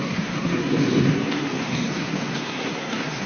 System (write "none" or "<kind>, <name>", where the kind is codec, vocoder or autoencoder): codec, SNAC